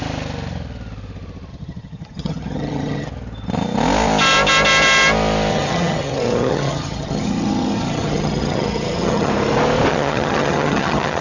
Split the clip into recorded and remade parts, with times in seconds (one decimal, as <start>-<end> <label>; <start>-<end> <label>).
0.0-1.5 recorded; 1.5-3.1 remade; 3.1-5.5 recorded; 5.5-9.3 remade; 9.3-9.9 recorded; 9.9-11.2 remade